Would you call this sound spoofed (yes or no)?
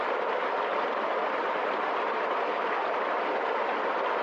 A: no